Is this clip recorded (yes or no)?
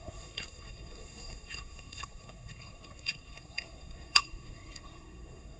no